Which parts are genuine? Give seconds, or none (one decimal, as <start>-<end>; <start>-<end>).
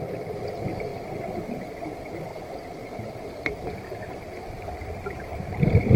0.9-1.5